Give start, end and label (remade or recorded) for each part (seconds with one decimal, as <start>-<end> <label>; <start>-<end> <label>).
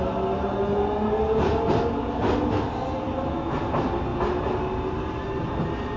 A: 0.0-6.0 recorded